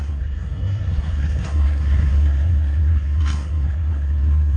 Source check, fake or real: fake